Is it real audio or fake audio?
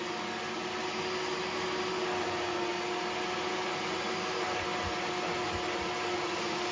real